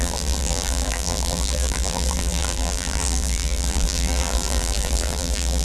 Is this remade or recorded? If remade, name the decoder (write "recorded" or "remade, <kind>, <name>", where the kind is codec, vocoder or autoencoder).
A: remade, vocoder, BigVGAN v2